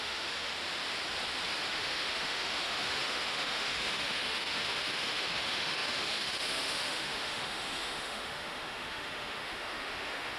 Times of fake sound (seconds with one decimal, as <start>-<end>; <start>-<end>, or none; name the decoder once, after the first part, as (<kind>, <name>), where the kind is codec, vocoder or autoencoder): 0.0-0.5 (autoencoder, DAC-VAE); 1.7-10.4